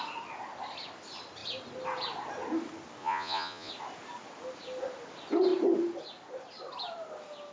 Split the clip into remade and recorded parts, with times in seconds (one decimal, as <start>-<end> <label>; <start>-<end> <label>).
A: 0.0-3.0 recorded; 3.0-3.7 remade; 3.7-7.5 recorded